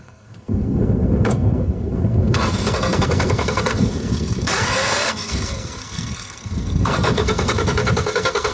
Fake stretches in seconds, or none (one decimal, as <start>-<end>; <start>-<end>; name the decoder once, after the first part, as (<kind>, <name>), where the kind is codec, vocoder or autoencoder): 0.0-8.5 (codec, SNAC)